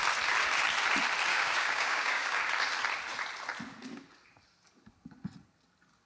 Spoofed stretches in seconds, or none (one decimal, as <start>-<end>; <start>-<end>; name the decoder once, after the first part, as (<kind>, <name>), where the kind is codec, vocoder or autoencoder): 1.3-2.4 (codec, DAC)